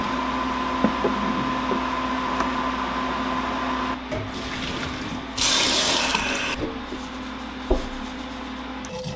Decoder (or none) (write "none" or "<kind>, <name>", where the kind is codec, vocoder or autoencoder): none